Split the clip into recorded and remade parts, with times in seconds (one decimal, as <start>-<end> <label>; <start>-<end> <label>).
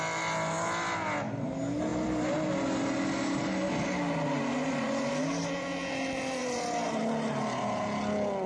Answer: 0.0-8.5 recorded